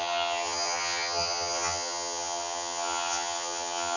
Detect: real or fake fake